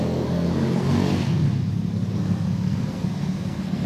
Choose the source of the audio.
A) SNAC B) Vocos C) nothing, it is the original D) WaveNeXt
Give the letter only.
A